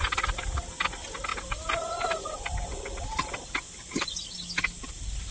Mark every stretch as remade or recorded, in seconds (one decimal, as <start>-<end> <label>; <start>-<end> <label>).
0.0-5.3 recorded